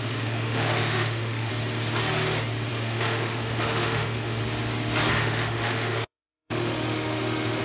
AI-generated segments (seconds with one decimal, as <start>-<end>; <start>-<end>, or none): 0.0-1.5; 2.7-4.4; 5.1-7.6